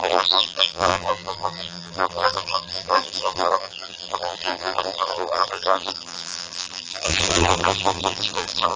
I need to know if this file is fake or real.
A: fake